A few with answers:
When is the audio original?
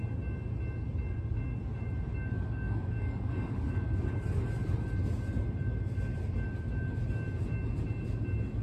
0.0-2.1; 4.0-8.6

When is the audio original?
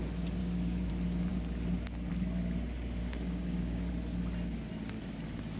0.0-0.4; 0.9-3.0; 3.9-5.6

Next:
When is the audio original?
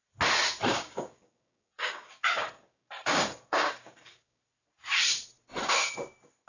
0.0-0.7; 4.4-6.5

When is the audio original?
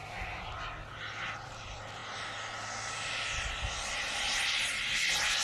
0.0-5.4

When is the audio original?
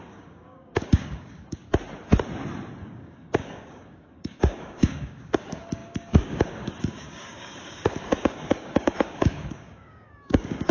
1.7-2.8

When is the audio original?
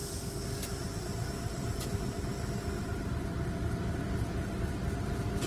0.0-5.5